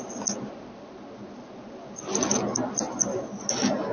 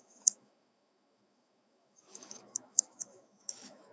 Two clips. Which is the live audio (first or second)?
first